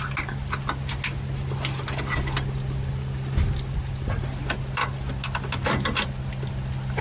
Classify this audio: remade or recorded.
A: recorded